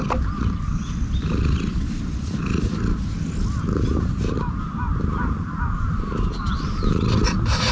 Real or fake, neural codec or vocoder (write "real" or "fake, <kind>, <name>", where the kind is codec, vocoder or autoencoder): real